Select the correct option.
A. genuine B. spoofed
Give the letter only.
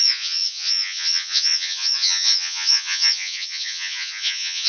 B